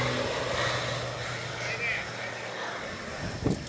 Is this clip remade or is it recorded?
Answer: recorded